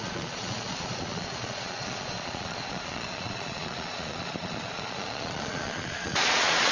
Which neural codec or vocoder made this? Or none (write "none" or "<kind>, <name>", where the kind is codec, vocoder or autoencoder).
vocoder, Vocos